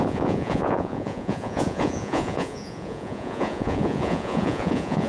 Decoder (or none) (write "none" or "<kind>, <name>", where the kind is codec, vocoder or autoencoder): vocoder, Vocos